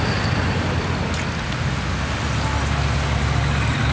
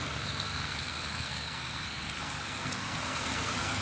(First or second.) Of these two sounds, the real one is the first